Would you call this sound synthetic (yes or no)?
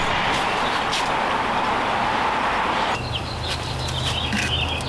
no